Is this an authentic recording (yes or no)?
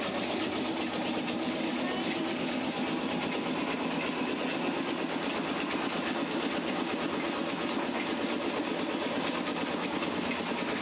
yes